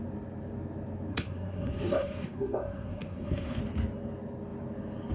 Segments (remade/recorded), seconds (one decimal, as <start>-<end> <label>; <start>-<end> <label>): 0.0-1.1 recorded; 1.1-3.6 remade; 3.6-5.1 recorded